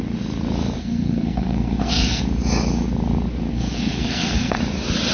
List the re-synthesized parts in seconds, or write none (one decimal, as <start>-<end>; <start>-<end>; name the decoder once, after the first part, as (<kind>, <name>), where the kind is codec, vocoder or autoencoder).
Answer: 0.8-2.2 (codec, SNAC); 3.5-4.6

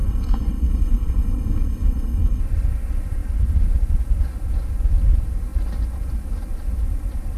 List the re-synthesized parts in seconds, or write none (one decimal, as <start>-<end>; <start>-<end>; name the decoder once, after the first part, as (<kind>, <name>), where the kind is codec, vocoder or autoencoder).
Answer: 0.0-2.4 (codec, SNAC)